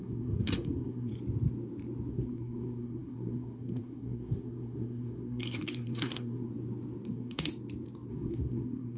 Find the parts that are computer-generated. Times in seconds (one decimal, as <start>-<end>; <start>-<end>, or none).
0.0-1.1; 2.1-6.5; 7.1-7.5; 8.1-9.0